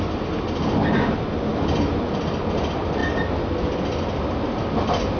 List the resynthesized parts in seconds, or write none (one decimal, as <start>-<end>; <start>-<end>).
none